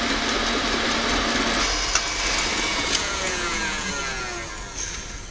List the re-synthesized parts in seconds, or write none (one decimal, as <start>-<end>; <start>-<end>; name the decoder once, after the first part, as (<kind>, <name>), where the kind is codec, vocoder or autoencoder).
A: 2.7-3.9 (vocoder, Vocos)